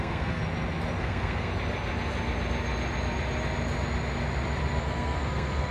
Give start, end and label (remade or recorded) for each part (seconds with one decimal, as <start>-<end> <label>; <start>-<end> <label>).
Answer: 0.0-0.4 remade; 0.4-1.0 recorded; 1.0-1.5 remade; 1.5-4.8 recorded; 4.8-5.7 remade